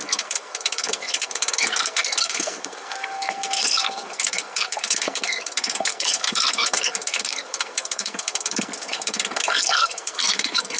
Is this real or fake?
fake